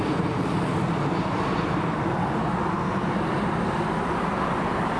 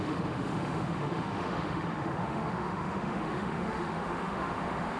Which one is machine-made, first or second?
second